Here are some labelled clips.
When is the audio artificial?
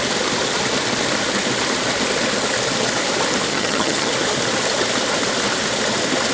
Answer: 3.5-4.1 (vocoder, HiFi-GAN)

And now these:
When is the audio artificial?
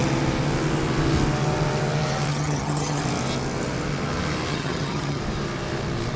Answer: 2.3-3.0 (vocoder, HiFi-GAN); 4.5-5.2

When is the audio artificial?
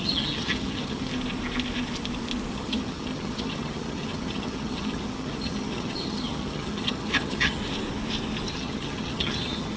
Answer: 0.0-1.1 (vocoder, HiFi-GAN); 2.5-7.6; 8.5-9.8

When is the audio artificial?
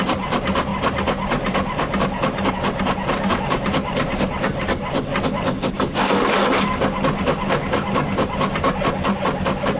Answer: none